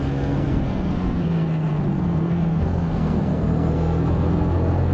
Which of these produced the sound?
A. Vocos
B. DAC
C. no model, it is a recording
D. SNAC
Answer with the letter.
D